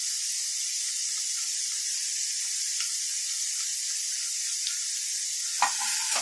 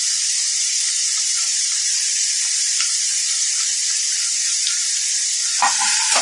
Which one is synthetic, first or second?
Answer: second